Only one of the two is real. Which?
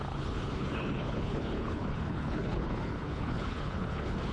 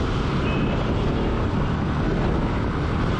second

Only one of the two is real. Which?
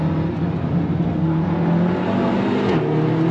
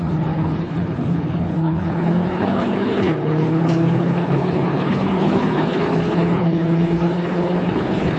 first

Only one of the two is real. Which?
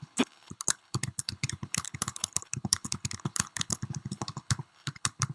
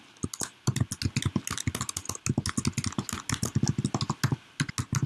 second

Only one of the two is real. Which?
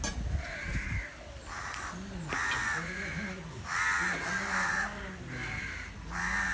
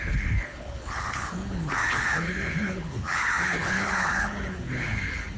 first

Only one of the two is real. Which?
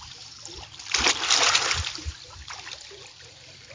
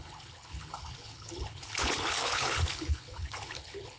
first